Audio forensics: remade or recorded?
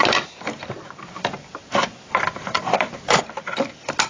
remade